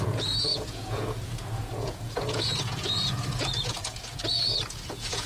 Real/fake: fake